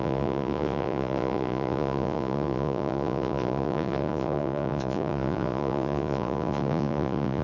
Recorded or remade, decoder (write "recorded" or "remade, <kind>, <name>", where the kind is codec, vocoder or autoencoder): remade, vocoder, Vocos